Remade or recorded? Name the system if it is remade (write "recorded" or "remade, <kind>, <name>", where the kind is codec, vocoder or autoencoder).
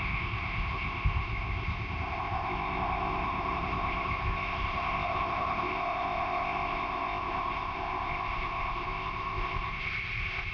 remade, codec, ZipCodec